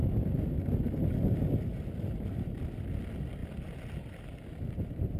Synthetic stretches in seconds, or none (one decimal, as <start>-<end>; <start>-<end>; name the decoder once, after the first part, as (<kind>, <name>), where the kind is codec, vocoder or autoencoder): 1.7-2.6 (vocoder, BigVGAN v2)